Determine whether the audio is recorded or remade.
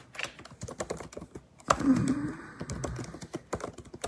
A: recorded